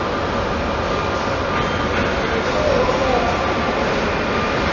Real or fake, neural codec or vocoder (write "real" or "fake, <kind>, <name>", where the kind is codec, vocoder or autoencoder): real